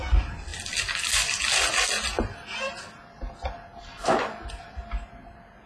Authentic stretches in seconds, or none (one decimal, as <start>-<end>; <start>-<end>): 0.0-5.7

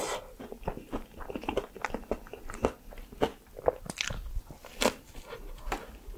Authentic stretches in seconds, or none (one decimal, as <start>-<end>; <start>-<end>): 0.0-6.2

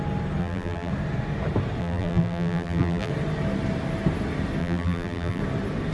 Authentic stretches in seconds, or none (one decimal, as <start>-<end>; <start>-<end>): 0.0-0.4; 0.9-1.8; 3.1-4.6; 5.4-5.9

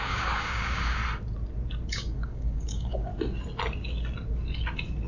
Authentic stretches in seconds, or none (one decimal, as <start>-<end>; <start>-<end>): 1.0-1.9; 3.1-5.1

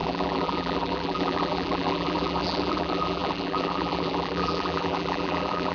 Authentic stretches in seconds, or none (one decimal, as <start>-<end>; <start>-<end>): none

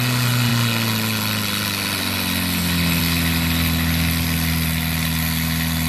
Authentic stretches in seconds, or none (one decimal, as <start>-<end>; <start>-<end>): 0.0-5.9

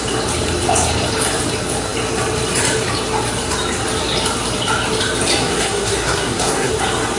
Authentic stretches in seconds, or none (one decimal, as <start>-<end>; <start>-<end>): 0.0-5.4; 6.7-7.2

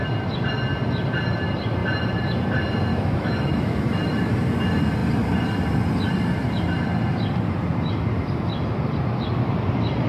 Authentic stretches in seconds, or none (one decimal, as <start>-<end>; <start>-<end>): 0.0-2.9; 4.4-10.1